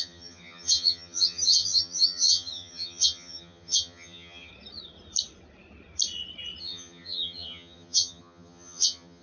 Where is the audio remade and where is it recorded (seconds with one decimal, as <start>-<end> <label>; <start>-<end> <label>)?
0.0-4.5 remade; 4.5-6.6 recorded; 6.6-9.2 remade